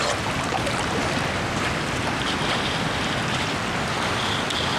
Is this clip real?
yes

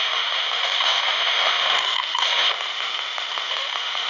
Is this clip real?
no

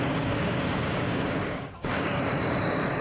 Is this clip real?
no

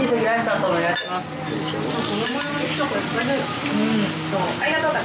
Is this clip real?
yes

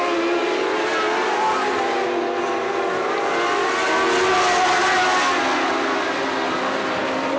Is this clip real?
yes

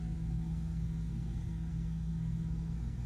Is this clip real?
no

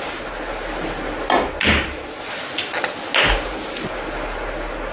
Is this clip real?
yes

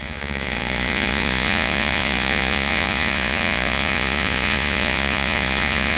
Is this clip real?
no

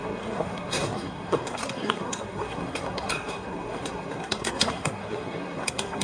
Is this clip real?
no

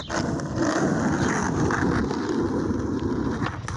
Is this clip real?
yes